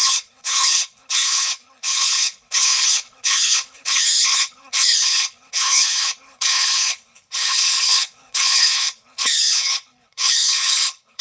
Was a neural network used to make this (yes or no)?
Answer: yes